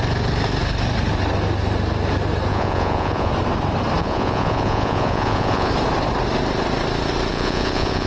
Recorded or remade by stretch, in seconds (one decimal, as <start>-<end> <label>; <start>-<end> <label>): 0.0-2.5 recorded; 2.5-3.3 remade; 3.3-4.0 recorded; 4.0-5.7 remade; 5.7-7.3 recorded; 7.3-8.1 remade